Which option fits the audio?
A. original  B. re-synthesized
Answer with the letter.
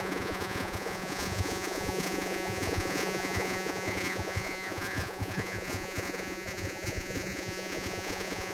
B